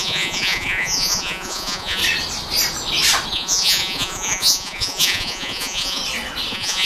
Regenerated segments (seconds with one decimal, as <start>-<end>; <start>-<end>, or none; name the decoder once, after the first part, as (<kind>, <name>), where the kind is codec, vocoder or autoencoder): 0.0-2.0 (vocoder, Vocos); 3.3-6.0; 6.5-6.9